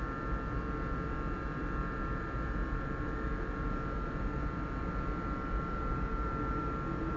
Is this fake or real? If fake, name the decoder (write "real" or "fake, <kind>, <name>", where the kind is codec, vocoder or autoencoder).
real